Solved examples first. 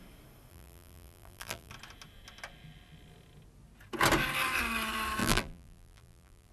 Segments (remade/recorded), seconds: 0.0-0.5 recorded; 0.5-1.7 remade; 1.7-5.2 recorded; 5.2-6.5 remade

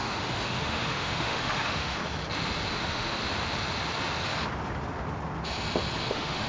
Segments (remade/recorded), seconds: 0.0-2.0 remade; 2.0-2.7 recorded; 2.7-3.2 remade; 3.2-6.1 recorded; 6.1-6.5 remade

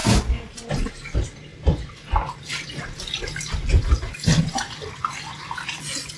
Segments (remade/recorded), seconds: 0.0-1.5 recorded; 1.5-5.1 remade; 5.1-6.2 recorded

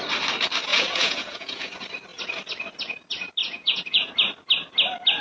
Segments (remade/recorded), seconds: 0.0-0.7 recorded; 0.7-1.7 remade; 1.7-3.4 recorded; 3.4-4.1 remade; 4.1-5.2 recorded

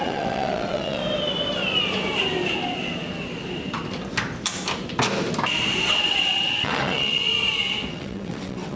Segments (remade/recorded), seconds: 0.0-1.0 remade; 1.0-5.9 recorded; 5.9-7.2 remade; 7.2-7.9 recorded; 7.9-8.8 remade

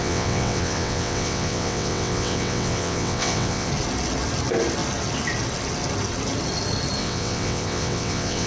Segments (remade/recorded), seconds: 0.0-3.7 remade; 3.7-7.0 recorded; 7.0-8.5 remade